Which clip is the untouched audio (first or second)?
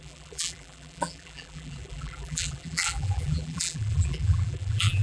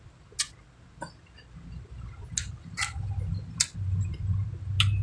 second